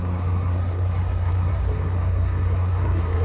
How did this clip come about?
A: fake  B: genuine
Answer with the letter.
A